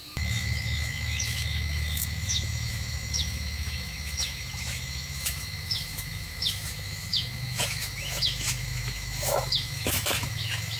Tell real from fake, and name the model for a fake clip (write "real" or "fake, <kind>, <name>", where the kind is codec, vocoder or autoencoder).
fake, autoencoder, DAC-VAE